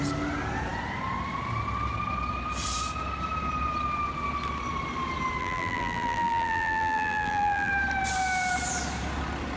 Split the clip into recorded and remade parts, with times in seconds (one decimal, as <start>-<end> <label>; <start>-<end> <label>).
0.0-5.4 recorded; 5.4-7.7 remade; 7.7-9.6 recorded